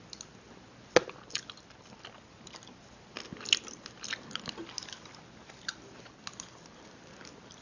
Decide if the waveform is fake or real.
real